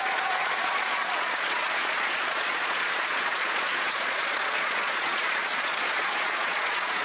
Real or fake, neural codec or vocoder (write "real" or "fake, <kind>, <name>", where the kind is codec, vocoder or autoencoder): fake, vocoder, Vocos